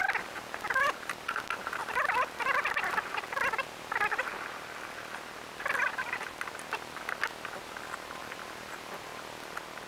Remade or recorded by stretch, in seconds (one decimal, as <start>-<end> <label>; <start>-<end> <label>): 0.0-1.8 remade; 1.8-2.6 recorded; 2.6-4.3 remade; 4.3-8.2 recorded; 8.2-9.1 remade; 9.1-9.9 recorded